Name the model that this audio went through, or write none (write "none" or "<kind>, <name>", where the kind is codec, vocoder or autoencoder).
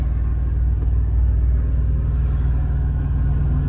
none